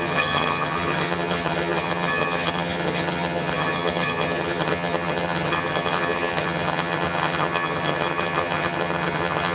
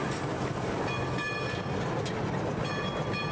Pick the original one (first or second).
second